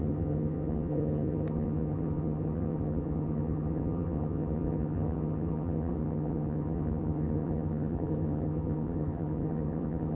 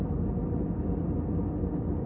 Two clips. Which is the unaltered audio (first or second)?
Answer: second